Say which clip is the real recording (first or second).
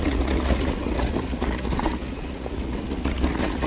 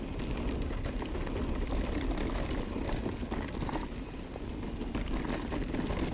second